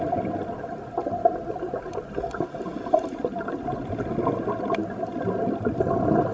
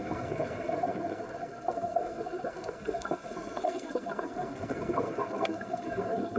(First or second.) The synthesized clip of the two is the second